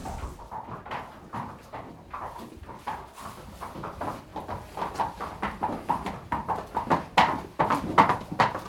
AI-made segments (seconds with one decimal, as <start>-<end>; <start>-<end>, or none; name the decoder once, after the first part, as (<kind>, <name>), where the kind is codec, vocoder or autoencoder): none